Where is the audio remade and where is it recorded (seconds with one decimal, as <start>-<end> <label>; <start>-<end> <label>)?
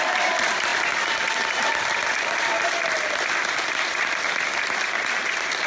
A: 0.0-5.7 recorded